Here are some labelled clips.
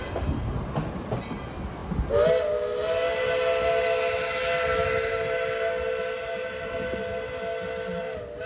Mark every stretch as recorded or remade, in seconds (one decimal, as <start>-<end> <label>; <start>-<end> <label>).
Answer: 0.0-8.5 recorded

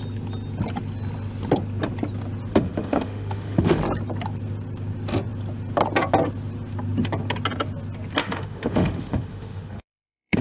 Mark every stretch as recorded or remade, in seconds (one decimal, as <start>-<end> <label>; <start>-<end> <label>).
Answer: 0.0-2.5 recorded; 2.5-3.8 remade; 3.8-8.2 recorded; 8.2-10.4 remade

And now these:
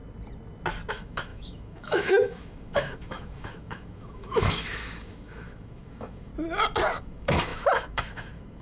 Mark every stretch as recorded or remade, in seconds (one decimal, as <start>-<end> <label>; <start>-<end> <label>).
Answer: 0.0-0.9 recorded; 0.9-6.3 remade; 6.3-7.0 recorded; 7.0-8.6 remade

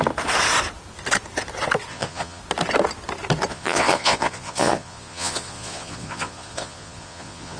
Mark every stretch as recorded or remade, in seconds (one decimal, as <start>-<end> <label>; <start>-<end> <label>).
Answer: 0.0-1.9 recorded; 1.9-2.4 remade; 2.4-3.5 recorded; 3.5-7.6 remade